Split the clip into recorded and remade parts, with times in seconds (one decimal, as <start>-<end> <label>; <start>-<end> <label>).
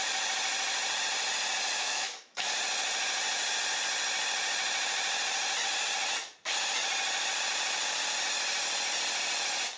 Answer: 0.0-1.8 recorded; 1.8-2.5 remade; 2.5-9.8 recorded